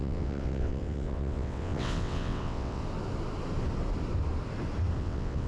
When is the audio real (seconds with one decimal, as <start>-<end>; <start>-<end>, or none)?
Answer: 2.8-5.0